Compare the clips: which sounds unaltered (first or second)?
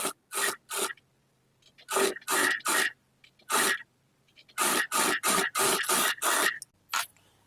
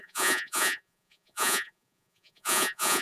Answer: first